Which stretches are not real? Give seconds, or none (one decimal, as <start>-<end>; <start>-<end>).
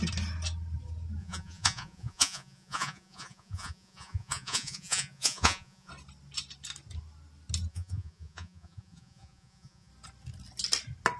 1.2-5.9; 7.7-9.9